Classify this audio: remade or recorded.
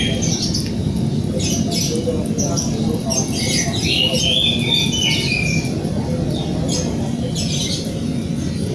recorded